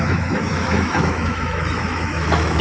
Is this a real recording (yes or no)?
no